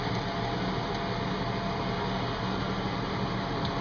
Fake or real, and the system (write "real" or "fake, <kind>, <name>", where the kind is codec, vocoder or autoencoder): real